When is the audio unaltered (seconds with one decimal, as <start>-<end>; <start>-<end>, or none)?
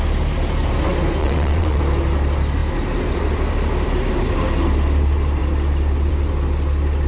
0.0-1.2; 1.8-7.1